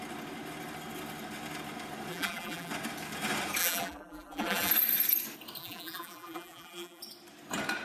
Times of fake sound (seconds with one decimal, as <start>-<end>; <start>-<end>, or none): 2.1-2.7; 3.6-4.7; 5.6-7.0

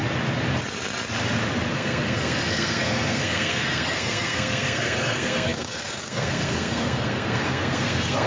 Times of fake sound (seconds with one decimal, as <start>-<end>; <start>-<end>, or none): 1.7-8.3

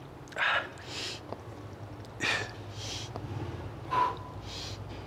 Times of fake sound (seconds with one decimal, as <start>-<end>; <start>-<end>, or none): none

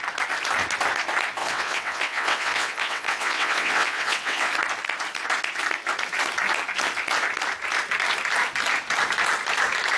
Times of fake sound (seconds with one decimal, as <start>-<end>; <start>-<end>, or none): 1.4-4.5

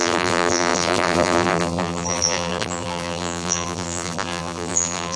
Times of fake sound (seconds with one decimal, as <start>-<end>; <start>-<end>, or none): 0.0-5.2

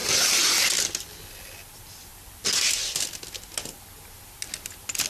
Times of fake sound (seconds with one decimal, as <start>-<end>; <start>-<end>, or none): none